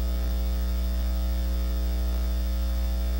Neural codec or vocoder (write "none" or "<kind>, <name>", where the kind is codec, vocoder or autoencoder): none